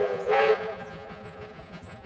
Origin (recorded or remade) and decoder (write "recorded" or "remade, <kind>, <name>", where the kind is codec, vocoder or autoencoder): remade, vocoder, Vocos